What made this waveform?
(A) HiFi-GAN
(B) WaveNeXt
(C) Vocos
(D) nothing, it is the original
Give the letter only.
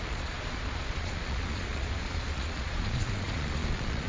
C